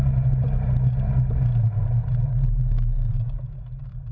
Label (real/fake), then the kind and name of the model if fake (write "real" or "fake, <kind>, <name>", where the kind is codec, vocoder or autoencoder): real